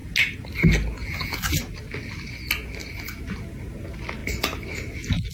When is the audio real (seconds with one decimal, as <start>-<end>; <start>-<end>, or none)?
0.0-4.2; 4.7-5.3